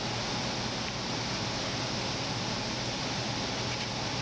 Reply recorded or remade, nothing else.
recorded